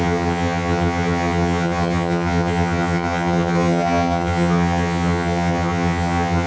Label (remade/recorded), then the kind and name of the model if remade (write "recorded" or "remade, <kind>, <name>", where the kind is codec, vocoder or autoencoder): remade, vocoder, HiFi-GAN